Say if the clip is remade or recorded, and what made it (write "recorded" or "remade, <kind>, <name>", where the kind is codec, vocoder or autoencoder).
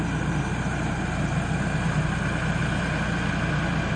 recorded